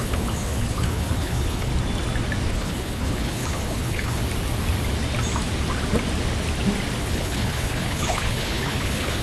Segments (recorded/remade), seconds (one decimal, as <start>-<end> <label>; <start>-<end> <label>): 0.0-1.7 remade; 1.7-2.5 recorded; 2.5-4.2 remade; 4.2-7.0 recorded; 7.0-9.2 remade